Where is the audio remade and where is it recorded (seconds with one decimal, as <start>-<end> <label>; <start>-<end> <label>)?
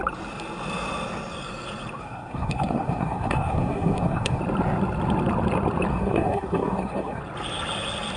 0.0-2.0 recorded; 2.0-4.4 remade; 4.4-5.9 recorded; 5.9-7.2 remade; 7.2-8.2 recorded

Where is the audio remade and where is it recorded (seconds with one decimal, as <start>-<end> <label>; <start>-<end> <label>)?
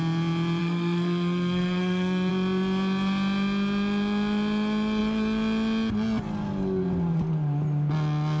0.0-0.6 recorded; 0.6-2.3 remade; 2.3-8.4 recorded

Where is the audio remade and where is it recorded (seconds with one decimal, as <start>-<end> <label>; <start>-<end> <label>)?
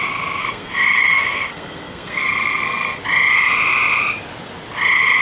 0.0-0.4 recorded; 0.4-3.0 remade; 3.0-5.2 recorded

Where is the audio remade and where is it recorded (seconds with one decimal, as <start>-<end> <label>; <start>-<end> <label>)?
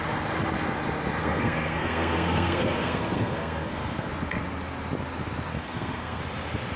0.0-1.2 recorded; 1.2-4.1 remade; 4.1-5.5 recorded; 5.5-6.2 remade; 6.2-6.8 recorded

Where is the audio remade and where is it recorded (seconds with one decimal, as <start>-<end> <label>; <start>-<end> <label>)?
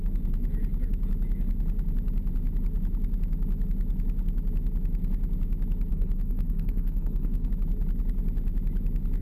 0.0-5.9 recorded; 5.9-7.5 remade; 7.5-9.2 recorded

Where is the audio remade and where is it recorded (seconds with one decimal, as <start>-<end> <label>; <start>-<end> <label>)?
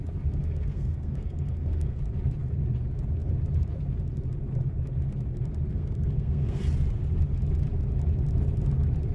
0.0-0.4 recorded; 0.4-2.0 remade; 2.0-5.7 recorded; 5.7-6.6 remade; 6.6-9.1 recorded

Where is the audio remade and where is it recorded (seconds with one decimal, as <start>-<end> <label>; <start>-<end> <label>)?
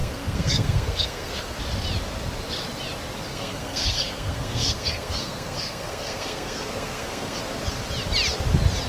0.0-1.6 remade; 1.6-3.3 recorded; 3.3-7.4 remade; 7.4-8.9 recorded